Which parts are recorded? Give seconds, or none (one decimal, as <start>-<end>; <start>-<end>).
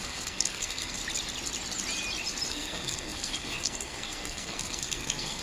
1.0-2.5